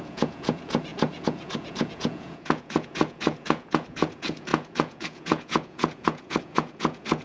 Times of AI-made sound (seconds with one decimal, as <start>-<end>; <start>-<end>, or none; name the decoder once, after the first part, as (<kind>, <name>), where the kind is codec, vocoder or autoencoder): 0.0-7.2 (vocoder, Vocos)